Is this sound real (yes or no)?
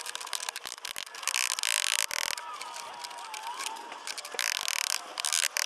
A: yes